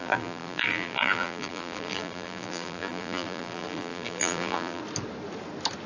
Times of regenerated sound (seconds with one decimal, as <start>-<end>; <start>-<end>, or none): 0.0-4.8